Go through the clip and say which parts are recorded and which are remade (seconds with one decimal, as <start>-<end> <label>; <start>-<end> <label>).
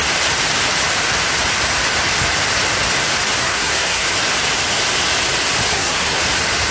0.0-3.4 recorded; 3.4-4.1 remade; 4.1-5.7 recorded; 5.7-6.2 remade; 6.2-6.7 recorded